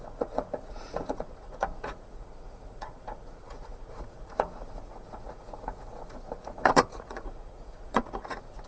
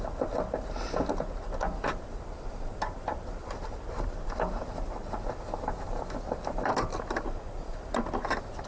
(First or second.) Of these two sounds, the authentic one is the second